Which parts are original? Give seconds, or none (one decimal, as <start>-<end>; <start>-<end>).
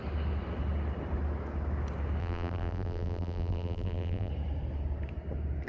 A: 0.0-2.2; 4.3-5.7